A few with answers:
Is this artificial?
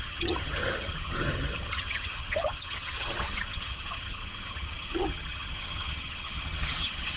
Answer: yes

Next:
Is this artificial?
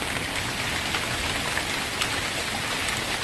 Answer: no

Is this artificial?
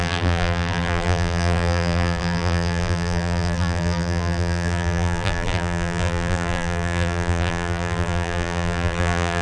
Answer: yes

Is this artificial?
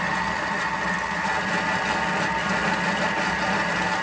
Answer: no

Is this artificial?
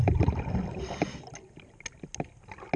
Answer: no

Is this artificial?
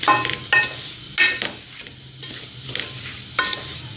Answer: no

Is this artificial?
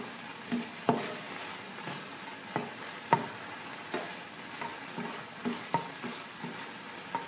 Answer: no